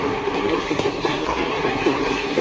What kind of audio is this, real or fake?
fake